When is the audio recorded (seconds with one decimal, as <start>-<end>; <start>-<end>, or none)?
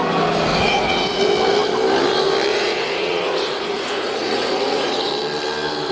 0.0-0.5; 1.2-2.5; 5.1-5.9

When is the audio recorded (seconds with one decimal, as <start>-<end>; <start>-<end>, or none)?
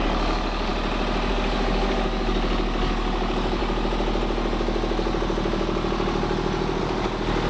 0.7-1.3; 3.6-6.8